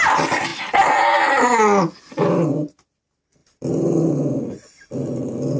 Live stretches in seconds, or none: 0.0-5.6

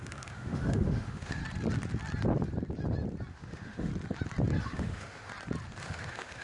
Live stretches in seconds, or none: 1.4-3.3; 3.9-4.6; 5.3-5.8

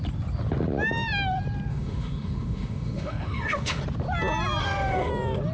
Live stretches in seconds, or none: 0.0-1.7; 3.8-4.6; 5.1-5.5

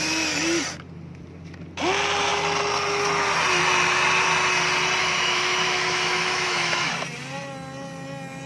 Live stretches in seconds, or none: 0.0-5.0; 6.9-8.5

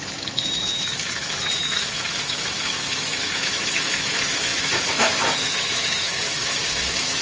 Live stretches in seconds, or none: none